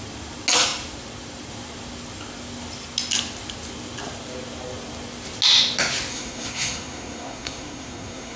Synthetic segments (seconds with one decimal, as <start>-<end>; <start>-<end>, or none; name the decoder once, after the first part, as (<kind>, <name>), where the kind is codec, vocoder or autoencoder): 6.1-8.4 (codec, SNAC)